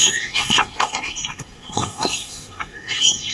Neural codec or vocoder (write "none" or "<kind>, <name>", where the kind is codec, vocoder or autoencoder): codec, SNAC